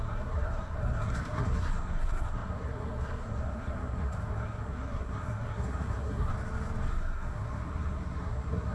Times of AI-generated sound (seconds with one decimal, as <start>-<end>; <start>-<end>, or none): 0.0-6.3; 6.9-8.7